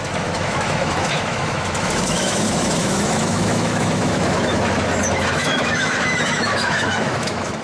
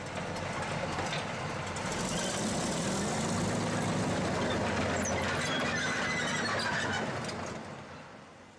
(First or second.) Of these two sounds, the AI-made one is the first